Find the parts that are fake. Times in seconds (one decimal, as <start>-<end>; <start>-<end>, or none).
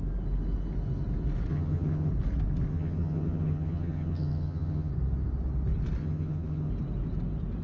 1.5-2.1; 2.7-4.9; 6.0-6.7